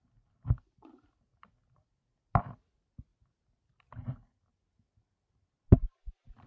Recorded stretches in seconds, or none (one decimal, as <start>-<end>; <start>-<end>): 0.0-6.5